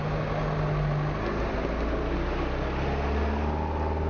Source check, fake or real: real